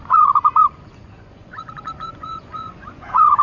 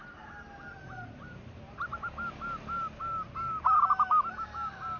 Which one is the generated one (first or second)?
first